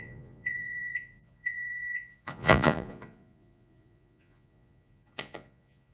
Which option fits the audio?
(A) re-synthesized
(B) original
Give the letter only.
A